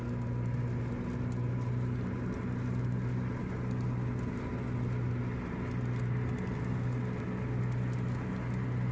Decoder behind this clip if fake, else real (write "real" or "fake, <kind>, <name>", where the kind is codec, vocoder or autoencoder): real